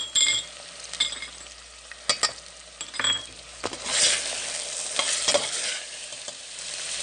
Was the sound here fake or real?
real